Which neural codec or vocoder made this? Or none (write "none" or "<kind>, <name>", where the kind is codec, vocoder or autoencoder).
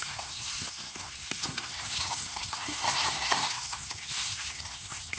codec, SNAC